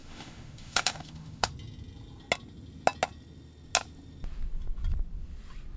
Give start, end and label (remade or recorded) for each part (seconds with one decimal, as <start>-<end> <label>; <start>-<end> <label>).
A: 0.0-1.5 remade; 1.5-5.8 recorded

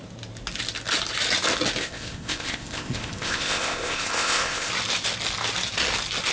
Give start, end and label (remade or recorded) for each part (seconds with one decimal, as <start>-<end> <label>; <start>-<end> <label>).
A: 0.0-1.8 recorded; 1.8-4.7 remade; 4.7-6.3 recorded

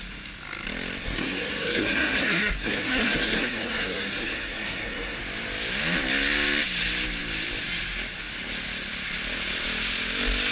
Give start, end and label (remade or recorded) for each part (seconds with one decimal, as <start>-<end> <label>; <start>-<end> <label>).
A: 0.0-1.0 recorded; 1.0-5.2 remade; 5.2-10.5 recorded

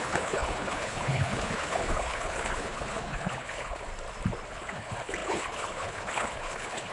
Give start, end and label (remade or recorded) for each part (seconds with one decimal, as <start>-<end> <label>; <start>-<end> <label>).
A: 0.0-3.9 remade; 3.9-4.5 recorded; 4.5-6.9 remade

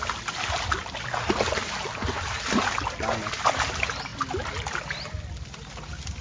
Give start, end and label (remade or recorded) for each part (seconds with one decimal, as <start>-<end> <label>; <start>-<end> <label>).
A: 0.0-1.5 recorded; 1.5-2.7 remade; 2.7-6.2 recorded

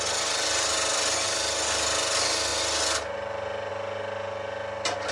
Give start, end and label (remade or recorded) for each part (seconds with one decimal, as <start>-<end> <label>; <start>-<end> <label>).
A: 0.0-5.1 recorded